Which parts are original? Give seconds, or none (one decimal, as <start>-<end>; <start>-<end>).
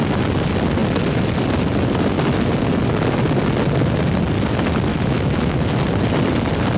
0.0-4.9; 5.8-6.8